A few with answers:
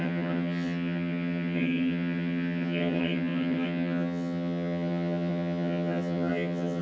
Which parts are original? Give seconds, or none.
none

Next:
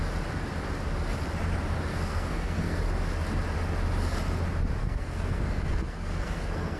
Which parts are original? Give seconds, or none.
0.0-1.9; 2.8-4.8

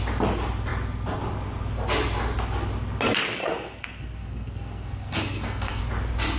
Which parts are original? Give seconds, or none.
0.0-3.4; 5.8-6.4

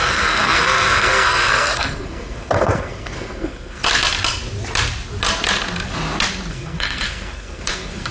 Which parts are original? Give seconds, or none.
3.8-6.5

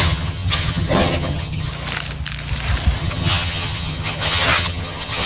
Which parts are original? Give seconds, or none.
1.7-3.0

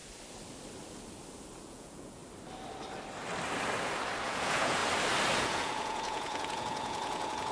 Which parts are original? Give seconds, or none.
0.0-1.6; 2.2-4.2; 4.8-5.4

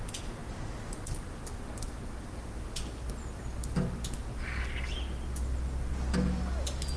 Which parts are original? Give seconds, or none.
0.0-7.0

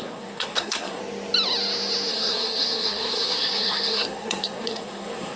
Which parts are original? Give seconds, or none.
1.0-2.1